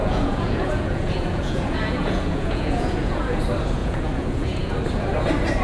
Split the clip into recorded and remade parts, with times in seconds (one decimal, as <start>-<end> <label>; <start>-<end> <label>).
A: 0.0-3.4 remade; 3.4-3.8 recorded; 3.8-4.7 remade; 4.7-5.6 recorded